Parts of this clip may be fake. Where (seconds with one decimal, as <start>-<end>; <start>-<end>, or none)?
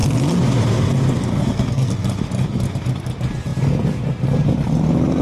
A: 1.4-1.9